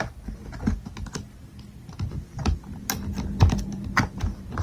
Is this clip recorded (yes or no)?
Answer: yes